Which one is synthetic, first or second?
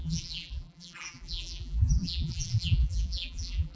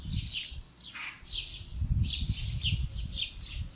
first